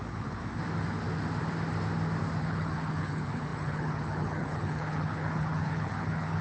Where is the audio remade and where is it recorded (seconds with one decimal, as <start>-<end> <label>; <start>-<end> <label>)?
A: 0.0-0.4 remade; 0.4-2.4 recorded; 2.4-6.4 remade